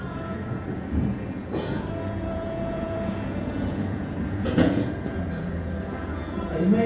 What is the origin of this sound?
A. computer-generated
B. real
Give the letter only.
A